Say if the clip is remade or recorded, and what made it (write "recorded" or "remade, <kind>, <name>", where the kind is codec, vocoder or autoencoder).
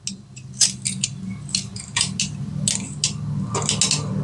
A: recorded